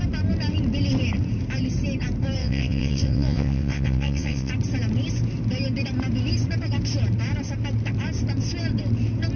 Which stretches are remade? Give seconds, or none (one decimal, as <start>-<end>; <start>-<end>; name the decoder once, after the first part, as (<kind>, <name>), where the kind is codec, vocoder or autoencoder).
2.4-4.5 (vocoder, WaveNeXt)